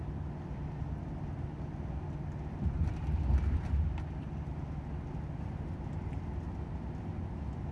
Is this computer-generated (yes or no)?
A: no